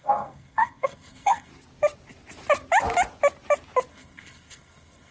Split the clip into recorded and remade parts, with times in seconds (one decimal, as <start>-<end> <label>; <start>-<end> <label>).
0.0-1.5 remade; 1.5-3.9 recorded; 3.9-5.1 remade